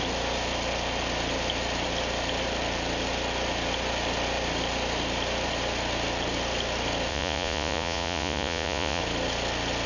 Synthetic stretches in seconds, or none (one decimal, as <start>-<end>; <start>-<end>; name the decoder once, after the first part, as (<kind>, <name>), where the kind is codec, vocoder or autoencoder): 7.1-9.0 (vocoder, Vocos)